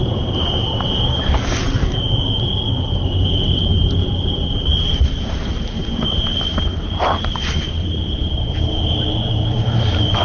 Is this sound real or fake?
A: fake